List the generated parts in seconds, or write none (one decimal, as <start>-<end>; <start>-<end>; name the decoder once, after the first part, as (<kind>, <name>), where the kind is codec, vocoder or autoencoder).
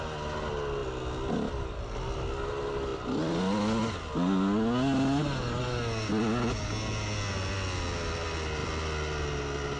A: none